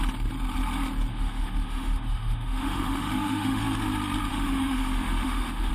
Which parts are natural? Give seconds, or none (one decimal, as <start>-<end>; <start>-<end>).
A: 0.0-1.1; 3.6-4.3